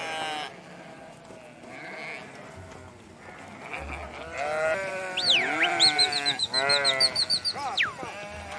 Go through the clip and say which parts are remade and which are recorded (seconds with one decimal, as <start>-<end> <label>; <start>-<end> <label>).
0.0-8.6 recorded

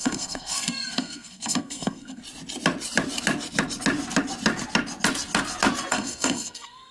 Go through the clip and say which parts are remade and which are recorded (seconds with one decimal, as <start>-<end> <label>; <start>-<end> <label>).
0.0-2.2 remade; 2.2-5.9 recorded; 5.9-6.9 remade

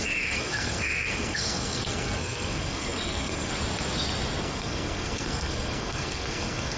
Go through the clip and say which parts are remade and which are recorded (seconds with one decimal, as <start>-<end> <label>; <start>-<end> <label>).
0.0-3.5 remade; 3.5-4.4 recorded; 4.4-6.8 remade

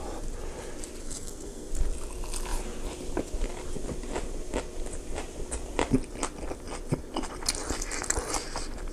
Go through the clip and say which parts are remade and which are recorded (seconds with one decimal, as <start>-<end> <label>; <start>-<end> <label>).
0.0-1.0 recorded; 1.0-1.7 remade; 1.7-8.9 recorded

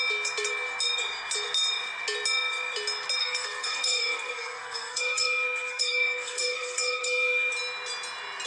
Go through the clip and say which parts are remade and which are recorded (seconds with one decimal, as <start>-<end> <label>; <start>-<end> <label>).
0.0-3.2 recorded; 3.2-7.5 remade; 7.5-8.5 recorded

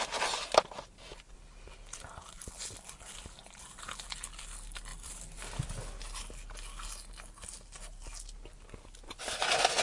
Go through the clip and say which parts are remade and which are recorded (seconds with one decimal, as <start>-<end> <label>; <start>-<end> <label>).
0.0-9.8 recorded

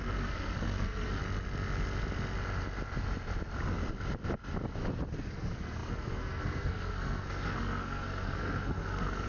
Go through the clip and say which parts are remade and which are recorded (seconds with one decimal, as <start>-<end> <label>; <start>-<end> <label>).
0.0-1.2 remade; 1.2-5.3 recorded; 5.3-9.3 remade

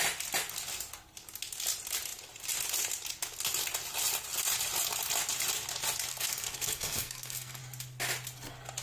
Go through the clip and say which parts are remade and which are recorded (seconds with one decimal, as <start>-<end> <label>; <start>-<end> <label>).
0.0-6.1 recorded; 6.1-7.6 remade; 7.6-8.8 recorded